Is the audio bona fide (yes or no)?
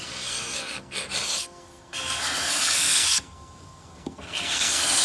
no